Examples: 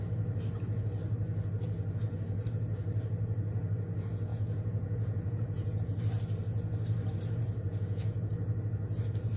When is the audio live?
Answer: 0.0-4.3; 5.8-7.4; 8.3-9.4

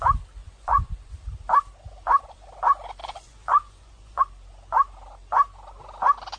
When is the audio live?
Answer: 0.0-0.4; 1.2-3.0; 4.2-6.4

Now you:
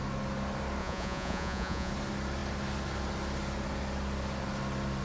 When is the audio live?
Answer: 0.0-0.8; 1.9-5.0

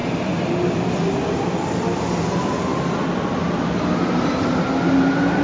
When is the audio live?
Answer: 0.0-5.4